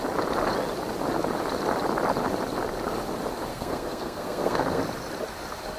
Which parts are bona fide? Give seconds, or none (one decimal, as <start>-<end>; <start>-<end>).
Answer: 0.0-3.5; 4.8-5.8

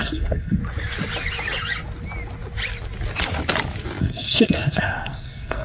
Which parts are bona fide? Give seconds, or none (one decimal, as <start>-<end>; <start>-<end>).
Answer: 0.6-4.0

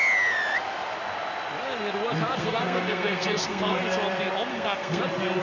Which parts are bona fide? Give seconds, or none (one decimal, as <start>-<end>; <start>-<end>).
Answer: 0.0-2.4; 3.8-4.5; 5.0-5.4